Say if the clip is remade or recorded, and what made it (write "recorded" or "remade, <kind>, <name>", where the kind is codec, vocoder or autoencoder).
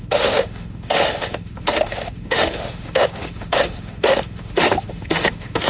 remade, autoencoder, DAC-VAE